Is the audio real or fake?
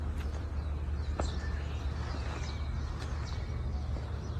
real